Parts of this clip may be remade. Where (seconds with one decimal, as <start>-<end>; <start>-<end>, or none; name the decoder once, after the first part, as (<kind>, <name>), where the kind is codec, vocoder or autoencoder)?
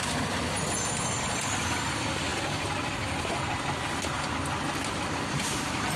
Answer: none